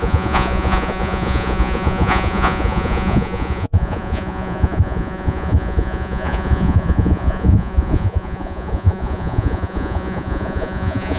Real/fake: fake